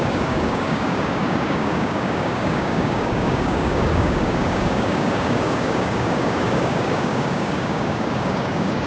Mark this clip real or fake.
fake